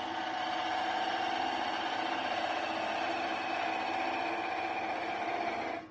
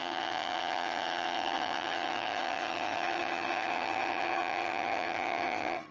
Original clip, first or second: first